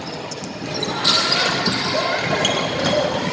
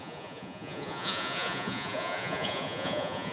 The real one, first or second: first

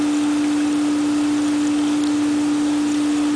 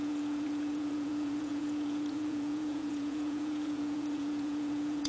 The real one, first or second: first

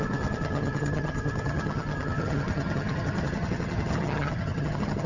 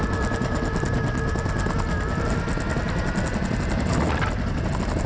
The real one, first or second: second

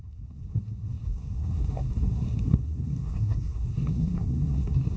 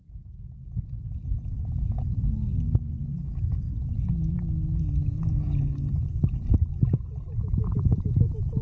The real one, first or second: second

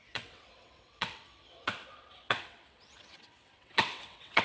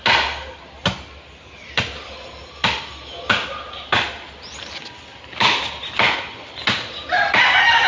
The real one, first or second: second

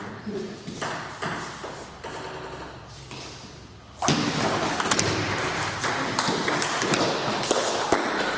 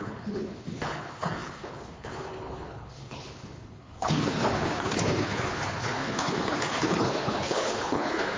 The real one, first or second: first